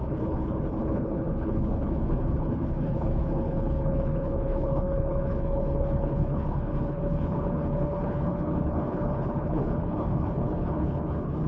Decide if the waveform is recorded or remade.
remade